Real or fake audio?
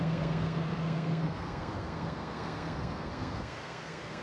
fake